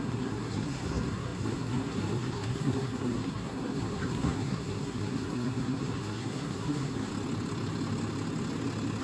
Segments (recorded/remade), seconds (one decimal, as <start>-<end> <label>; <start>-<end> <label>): 0.0-7.1 remade; 7.1-9.0 recorded